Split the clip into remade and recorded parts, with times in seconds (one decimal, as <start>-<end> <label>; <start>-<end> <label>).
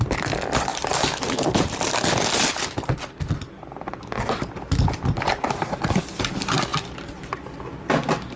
0.0-0.7 recorded; 0.7-1.9 remade; 1.9-8.4 recorded